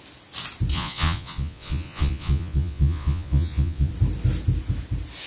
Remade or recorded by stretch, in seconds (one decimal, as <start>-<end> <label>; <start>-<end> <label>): 0.0-0.7 recorded; 0.7-3.9 remade; 3.9-5.3 recorded